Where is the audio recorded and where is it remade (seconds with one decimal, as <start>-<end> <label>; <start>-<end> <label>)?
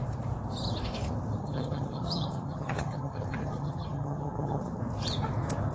0.0-1.4 recorded; 1.4-4.8 remade; 4.8-5.7 recorded